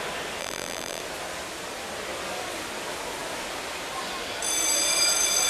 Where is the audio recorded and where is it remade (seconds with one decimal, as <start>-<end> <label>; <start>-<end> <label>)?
0.0-0.4 recorded; 0.4-1.0 remade; 1.0-5.5 recorded